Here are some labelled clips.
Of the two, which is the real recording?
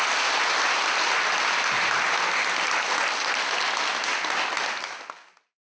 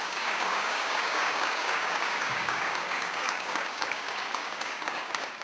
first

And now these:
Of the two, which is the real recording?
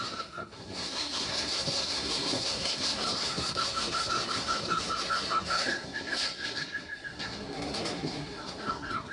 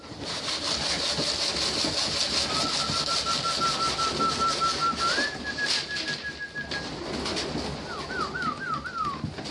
second